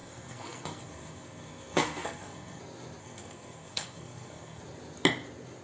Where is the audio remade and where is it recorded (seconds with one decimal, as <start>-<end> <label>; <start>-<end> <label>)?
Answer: 0.0-2.6 remade; 2.6-3.0 recorded; 3.0-4.6 remade; 4.6-5.6 recorded